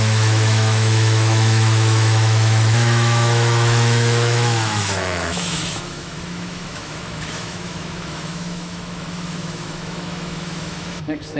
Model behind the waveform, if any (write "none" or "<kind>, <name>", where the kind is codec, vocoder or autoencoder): autoencoder, DAC-VAE